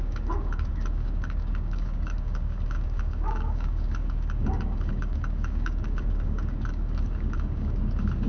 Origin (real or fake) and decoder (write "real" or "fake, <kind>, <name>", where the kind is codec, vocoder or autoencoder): fake, codec, DAC